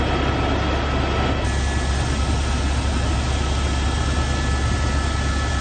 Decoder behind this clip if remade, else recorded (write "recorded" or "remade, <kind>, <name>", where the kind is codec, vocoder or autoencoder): recorded